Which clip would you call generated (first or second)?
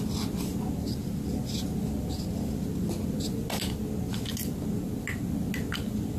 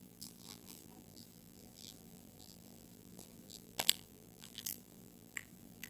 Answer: second